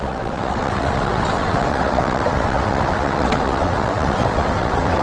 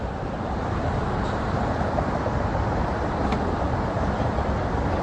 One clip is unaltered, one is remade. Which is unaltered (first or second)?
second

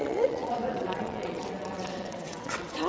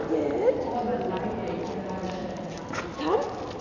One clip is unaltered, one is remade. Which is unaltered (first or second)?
second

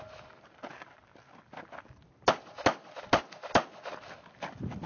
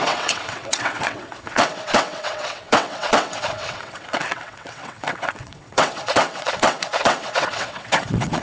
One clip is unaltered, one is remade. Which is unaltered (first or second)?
first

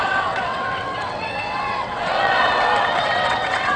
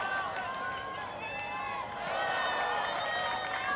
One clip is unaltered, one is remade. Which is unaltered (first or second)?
second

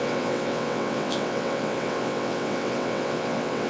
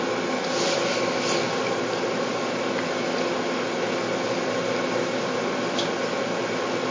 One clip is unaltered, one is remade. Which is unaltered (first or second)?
second